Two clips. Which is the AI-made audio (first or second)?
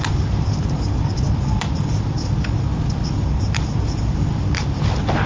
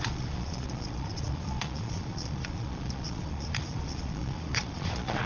second